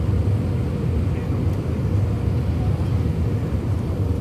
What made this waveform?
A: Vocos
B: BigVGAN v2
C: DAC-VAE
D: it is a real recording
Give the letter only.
D